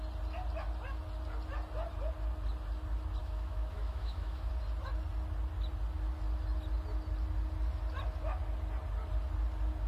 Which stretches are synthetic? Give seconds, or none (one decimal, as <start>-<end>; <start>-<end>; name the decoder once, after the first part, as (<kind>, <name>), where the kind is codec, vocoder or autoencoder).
3.2-4.5 (autoencoder, DAC-VAE)